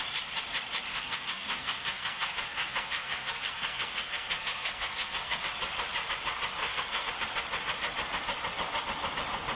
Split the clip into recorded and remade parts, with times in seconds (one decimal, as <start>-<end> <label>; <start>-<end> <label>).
0.0-0.9 recorded; 0.9-5.4 remade; 5.4-6.6 recorded; 6.6-7.1 remade; 7.1-9.6 recorded